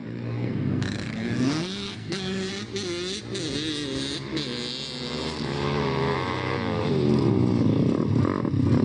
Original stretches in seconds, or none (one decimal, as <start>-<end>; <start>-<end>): 2.5-8.8